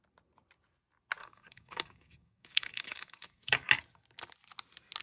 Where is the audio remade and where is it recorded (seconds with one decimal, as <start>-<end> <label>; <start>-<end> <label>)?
0.0-1.2 recorded; 1.2-3.7 remade; 3.7-5.0 recorded